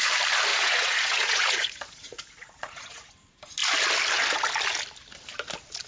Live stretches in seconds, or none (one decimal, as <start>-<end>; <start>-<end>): 0.0-0.5; 3.1-5.9

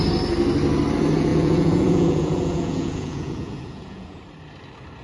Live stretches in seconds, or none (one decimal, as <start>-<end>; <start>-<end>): 0.0-1.3; 4.2-5.0